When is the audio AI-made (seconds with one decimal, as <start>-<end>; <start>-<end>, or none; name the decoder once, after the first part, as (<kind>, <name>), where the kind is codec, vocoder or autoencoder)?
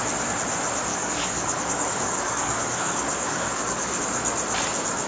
0.9-4.0 (codec, DAC)